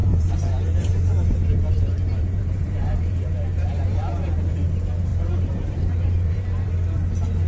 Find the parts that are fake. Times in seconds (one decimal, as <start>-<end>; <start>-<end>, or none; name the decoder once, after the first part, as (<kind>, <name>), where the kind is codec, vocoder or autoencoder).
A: 0.0-4.5 (vocoder, BigVGAN v2); 5.1-6.7

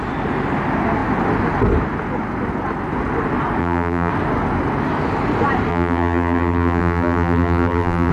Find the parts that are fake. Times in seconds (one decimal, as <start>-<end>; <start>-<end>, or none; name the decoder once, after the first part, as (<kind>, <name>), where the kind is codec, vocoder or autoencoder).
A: 3.6-4.1 (vocoder, BigVGAN v2); 5.7-8.1

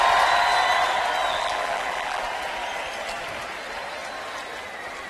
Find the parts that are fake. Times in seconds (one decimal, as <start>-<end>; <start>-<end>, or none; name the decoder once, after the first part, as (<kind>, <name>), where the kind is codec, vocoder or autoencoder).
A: 1.3-2.2 (vocoder, BigVGAN v2)

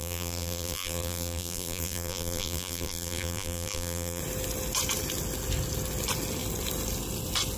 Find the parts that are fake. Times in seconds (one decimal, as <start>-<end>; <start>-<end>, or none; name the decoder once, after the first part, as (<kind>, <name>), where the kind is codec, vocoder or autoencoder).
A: 0.0-4.2 (vocoder, BigVGAN v2)